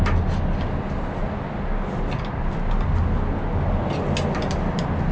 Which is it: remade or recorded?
recorded